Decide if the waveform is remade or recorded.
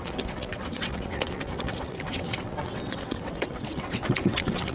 remade